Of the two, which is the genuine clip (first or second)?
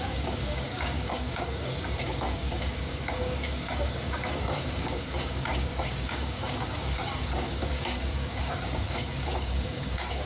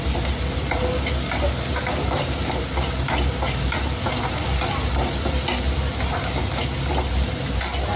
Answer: second